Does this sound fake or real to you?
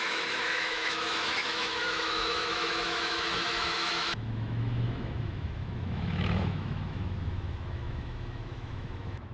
fake